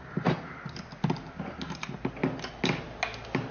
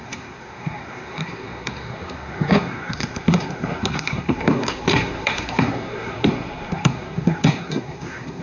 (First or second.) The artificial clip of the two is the second